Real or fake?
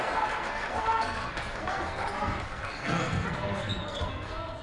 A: fake